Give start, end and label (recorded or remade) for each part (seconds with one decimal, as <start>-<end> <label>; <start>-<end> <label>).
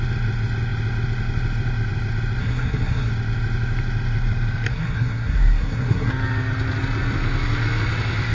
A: 0.0-2.4 recorded; 2.4-3.1 remade; 3.1-4.7 recorded; 4.7-6.1 remade; 6.1-8.3 recorded